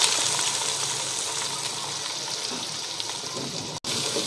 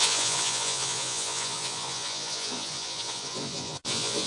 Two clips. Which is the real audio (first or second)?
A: first